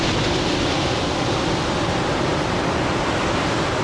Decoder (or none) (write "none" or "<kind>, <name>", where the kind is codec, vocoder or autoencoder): none